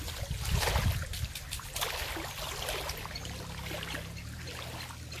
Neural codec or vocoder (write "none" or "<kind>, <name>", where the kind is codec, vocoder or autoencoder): none